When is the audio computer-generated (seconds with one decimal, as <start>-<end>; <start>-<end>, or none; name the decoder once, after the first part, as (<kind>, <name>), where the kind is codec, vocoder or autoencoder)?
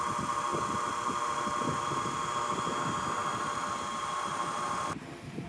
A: 3.9-5.5 (vocoder, BigVGAN v2)